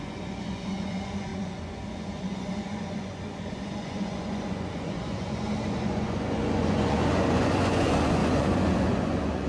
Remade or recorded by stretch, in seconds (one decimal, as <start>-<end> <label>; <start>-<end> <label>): 0.0-9.5 remade